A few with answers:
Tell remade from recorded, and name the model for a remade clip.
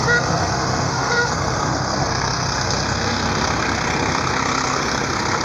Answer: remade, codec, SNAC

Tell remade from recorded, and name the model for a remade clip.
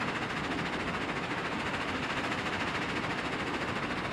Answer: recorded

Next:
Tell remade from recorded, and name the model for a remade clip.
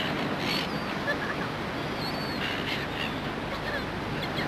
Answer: recorded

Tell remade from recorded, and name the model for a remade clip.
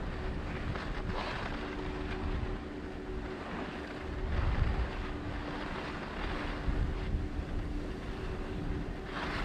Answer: recorded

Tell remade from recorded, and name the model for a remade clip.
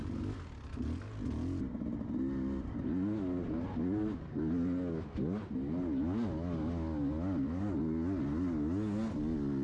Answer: recorded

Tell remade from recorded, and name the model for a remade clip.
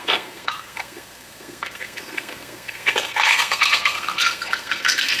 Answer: remade, codec, SNAC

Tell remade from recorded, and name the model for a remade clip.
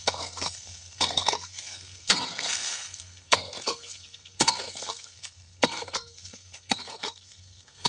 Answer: remade, codec, SNAC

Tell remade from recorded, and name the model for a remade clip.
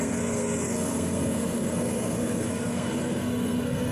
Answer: remade, codec, SNAC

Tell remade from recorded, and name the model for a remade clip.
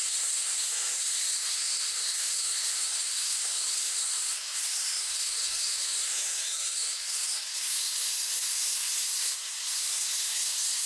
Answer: remade, codec, SNAC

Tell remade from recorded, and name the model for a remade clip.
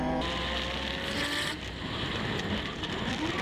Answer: recorded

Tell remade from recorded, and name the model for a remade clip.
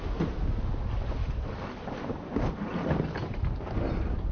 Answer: recorded